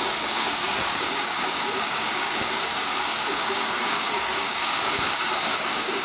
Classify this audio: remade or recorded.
remade